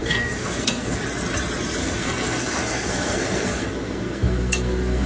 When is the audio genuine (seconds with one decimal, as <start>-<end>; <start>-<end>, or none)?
1.0-1.8